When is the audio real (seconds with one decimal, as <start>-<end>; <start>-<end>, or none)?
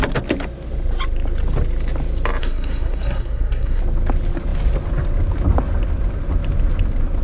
0.0-2.4; 3.8-7.2